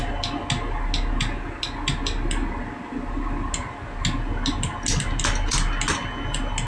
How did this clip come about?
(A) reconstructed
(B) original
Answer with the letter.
B